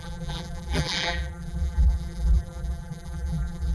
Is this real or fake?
fake